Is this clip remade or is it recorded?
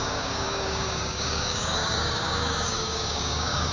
remade